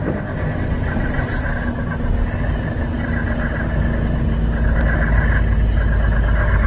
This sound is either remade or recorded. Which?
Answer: recorded